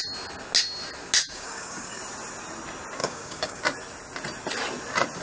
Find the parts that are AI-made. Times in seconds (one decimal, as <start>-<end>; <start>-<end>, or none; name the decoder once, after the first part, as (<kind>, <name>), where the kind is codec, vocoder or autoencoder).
1.2-2.0 (codec, DAC); 3.0-3.6